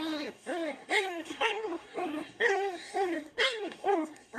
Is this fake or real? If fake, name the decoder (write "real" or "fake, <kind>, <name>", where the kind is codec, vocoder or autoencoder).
fake, codec, SNAC